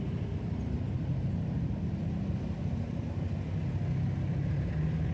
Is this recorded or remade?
recorded